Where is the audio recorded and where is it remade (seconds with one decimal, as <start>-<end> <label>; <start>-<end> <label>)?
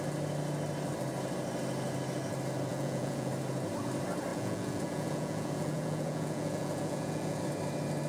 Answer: 0.0-2.7 recorded; 2.7-3.3 remade; 3.3-4.3 recorded; 4.3-7.4 remade; 7.4-8.1 recorded